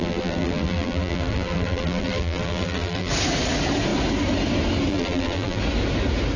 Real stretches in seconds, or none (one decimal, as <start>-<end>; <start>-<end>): 3.1-4.9; 5.6-6.4